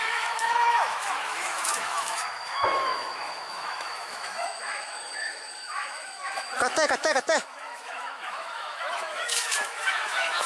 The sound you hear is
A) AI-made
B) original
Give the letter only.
A